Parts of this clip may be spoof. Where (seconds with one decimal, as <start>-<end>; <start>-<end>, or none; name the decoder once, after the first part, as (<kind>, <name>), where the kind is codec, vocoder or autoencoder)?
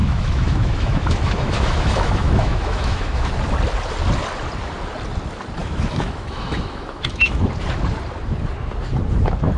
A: 0.0-3.3 (autoencoder, DAC-VAE); 5.6-7.4